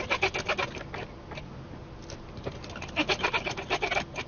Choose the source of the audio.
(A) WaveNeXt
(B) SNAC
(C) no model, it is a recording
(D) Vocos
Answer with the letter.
C